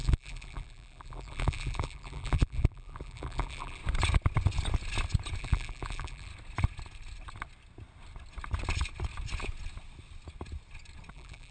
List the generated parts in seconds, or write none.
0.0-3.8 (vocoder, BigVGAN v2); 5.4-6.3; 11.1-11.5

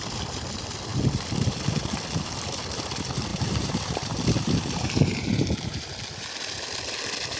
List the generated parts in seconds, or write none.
3.3-6.3 (vocoder, BigVGAN v2)

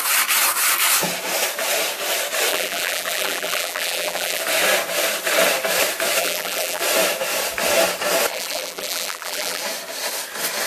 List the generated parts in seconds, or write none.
2.5-4.4 (vocoder, BigVGAN v2); 6.2-6.8; 8.3-9.6

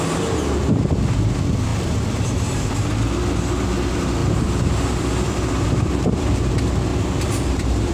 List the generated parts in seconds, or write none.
4.2-6.5 (vocoder, BigVGAN v2); 6.9-7.9

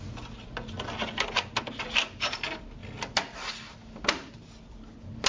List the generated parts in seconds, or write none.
none

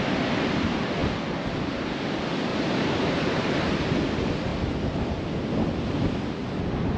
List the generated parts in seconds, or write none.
2.5-3.5 (vocoder, BigVGAN v2)

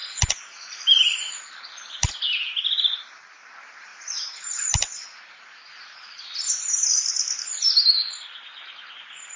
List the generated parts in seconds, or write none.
0.0-2.1 (vocoder, BigVGAN v2)